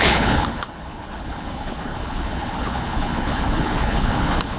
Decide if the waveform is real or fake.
fake